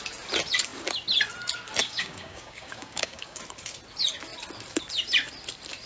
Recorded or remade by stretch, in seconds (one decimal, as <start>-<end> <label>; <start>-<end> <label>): 0.0-1.8 recorded; 1.8-3.4 remade; 3.4-5.9 recorded